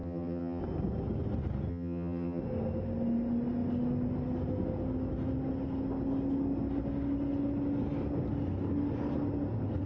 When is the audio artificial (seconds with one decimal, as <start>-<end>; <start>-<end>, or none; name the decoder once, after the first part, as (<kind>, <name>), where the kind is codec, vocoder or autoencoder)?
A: 0.0-0.6 (vocoder, HiFi-GAN); 1.7-2.4